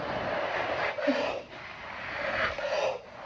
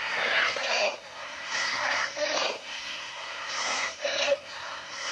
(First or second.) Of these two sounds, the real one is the first